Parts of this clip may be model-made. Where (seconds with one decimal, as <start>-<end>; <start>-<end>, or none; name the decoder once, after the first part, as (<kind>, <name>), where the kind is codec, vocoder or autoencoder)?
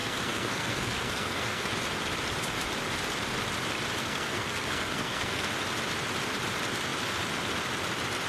0.0-1.7 (codec, SNAC); 4.0-5.5